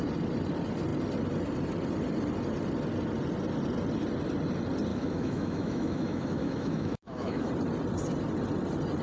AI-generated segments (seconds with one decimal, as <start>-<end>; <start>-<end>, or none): 4.9-7.5

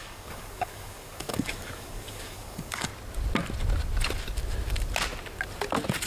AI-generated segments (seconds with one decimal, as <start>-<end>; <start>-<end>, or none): 0.0-2.9

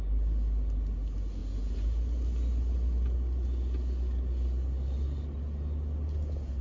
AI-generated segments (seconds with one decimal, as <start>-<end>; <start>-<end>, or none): none

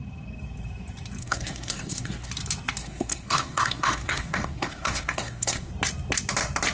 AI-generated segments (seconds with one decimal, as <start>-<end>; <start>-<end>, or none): 1.2-2.3; 2.8-5.7